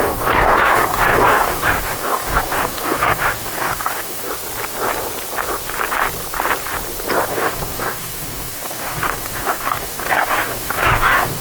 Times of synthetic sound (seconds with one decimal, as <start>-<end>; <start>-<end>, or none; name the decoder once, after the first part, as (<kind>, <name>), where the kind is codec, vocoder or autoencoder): 0.0-4.3 (codec, DAC); 7.3-11.4